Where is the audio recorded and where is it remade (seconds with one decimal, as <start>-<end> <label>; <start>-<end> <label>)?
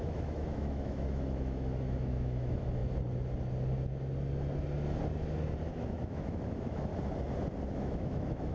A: 0.0-2.8 remade; 2.8-5.7 recorded; 5.7-6.9 remade; 6.9-7.7 recorded; 7.7-8.5 remade